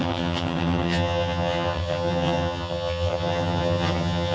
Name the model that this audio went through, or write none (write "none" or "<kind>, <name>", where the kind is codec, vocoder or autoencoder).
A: vocoder, HiFi-GAN